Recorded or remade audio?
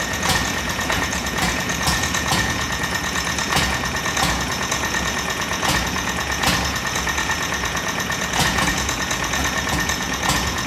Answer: remade